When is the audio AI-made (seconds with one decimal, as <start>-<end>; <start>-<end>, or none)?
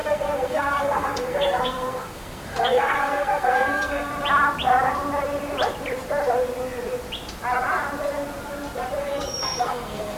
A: 0.0-4.1; 9.0-10.2